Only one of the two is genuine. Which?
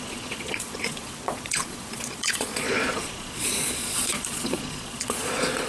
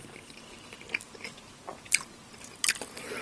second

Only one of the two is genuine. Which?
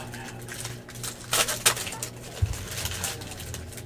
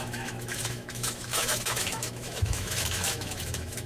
first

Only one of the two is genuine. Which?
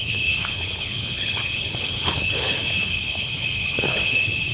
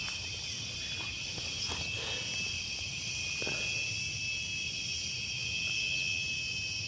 second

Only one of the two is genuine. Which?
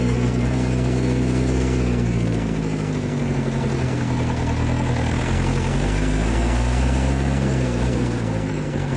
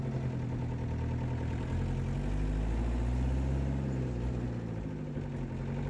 second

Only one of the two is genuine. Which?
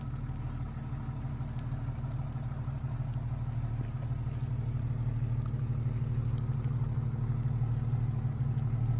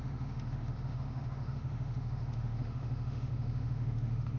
first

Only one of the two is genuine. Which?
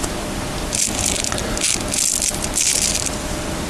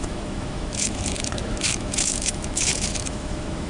first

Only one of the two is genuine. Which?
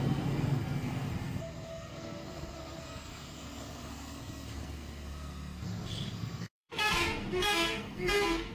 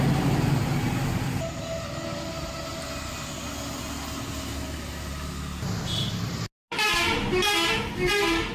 second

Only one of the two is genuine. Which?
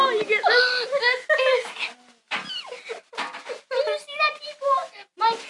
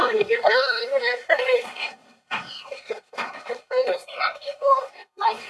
first